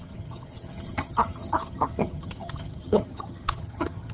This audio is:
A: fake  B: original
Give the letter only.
A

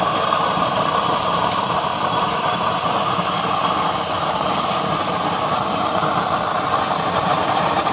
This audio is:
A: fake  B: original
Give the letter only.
A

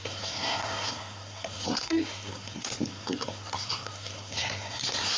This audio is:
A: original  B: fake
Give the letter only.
B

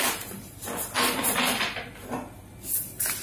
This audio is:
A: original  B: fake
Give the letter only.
A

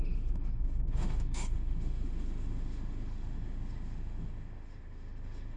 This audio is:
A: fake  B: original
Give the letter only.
A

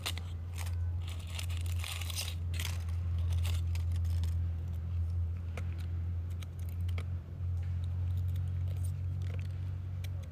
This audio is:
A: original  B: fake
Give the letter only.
A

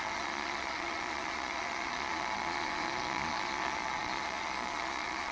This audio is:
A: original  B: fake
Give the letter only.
B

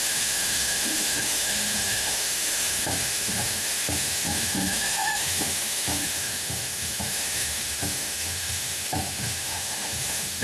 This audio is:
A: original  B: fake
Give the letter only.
B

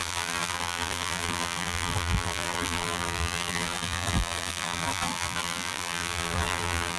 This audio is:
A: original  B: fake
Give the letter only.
B